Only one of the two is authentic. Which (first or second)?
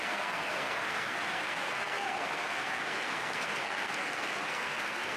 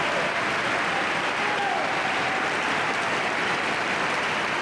second